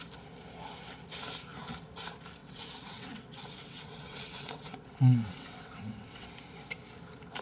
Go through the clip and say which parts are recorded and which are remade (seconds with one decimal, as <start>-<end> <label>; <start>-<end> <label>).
0.0-2.4 recorded; 2.4-6.3 remade; 6.3-7.4 recorded